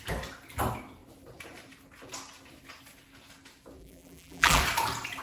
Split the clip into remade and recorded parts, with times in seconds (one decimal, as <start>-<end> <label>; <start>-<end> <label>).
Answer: 0.0-3.8 recorded; 3.8-4.6 remade; 4.6-5.2 recorded